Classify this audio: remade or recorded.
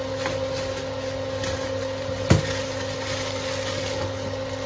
recorded